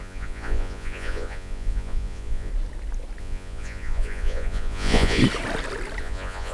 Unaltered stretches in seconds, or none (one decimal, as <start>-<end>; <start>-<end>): 2.5-3.2; 5.2-6.0